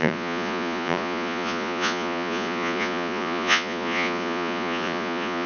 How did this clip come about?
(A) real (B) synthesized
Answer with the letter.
B